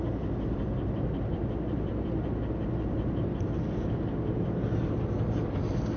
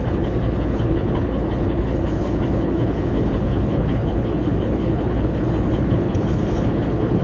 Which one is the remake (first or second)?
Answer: second